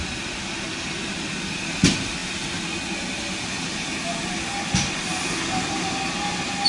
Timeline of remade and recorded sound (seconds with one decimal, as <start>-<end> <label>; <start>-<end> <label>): 0.0-6.7 recorded